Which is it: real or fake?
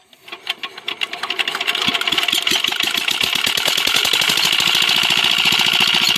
real